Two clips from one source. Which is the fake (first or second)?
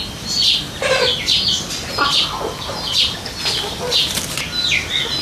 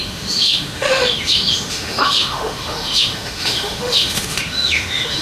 second